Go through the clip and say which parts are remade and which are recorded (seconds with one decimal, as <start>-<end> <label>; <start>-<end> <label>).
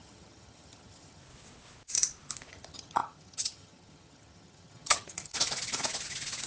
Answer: 0.0-1.2 remade; 1.2-2.5 recorded; 2.5-5.3 remade; 5.3-6.5 recorded